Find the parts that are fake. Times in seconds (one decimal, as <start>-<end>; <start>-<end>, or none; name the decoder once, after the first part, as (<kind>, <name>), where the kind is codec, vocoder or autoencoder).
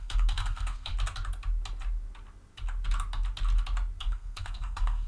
0.0-0.9 (codec, SNAC); 4.0-5.1